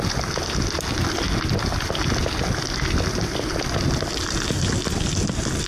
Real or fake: real